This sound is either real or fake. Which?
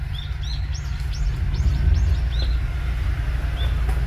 real